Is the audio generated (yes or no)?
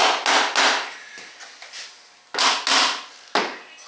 no